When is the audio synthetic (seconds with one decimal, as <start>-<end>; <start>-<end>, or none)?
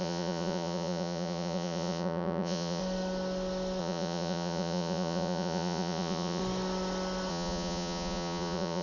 0.0-2.8; 3.8-6.4; 7.3-8.8